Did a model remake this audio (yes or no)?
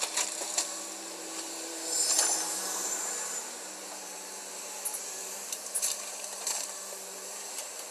yes